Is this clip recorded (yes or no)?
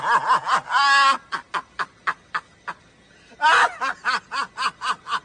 yes